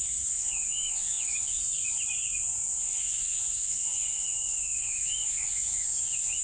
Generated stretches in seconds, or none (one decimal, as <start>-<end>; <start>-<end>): 0.0-1.6; 2.8-6.4